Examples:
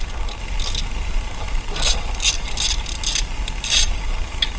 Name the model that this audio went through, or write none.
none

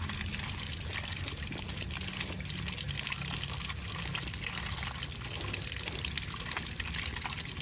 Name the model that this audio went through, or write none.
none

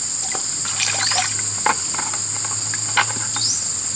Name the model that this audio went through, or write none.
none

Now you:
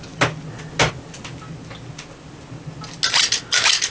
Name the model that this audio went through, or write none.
none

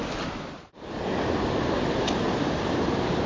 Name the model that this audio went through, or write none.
none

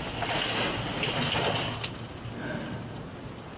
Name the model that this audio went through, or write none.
none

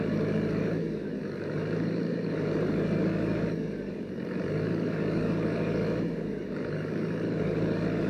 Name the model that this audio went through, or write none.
codec, DAC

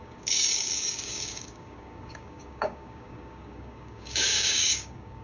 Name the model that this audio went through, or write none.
codec, DAC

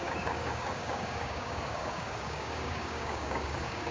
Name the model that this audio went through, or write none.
codec, DAC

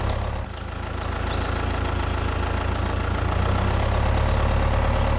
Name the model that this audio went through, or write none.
none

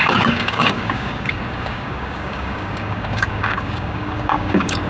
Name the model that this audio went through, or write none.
codec, DAC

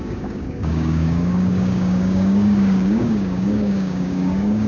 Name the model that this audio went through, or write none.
codec, DAC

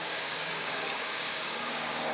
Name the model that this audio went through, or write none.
codec, DAC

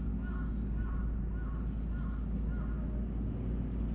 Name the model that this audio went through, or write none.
none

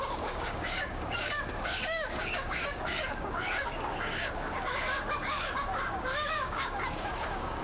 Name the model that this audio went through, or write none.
codec, DAC